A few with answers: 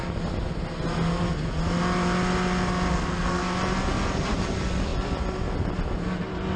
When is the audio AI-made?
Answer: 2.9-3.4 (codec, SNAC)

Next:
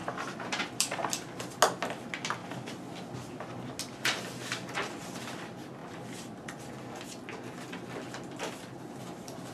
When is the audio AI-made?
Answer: 5.8-6.7 (vocoder, BigVGAN v2)

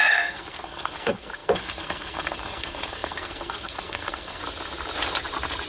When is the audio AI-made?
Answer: 0.0-4.4 (codec, SNAC)

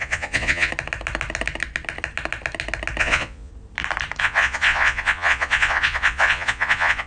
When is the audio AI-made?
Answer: 0.0-0.7 (vocoder, Vocos); 3.0-3.5; 4.2-7.1

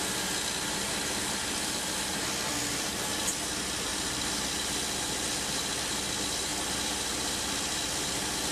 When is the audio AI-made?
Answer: none

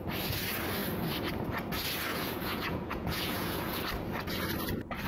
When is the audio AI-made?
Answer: 2.1-3.8 (vocoder, Vocos)

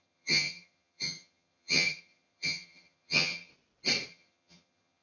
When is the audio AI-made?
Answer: 0.0-3.5 (vocoder, HiFi-GAN); 4.1-5.0

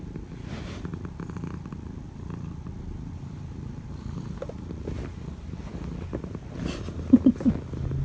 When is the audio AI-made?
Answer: none